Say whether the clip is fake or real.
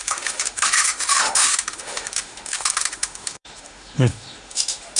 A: fake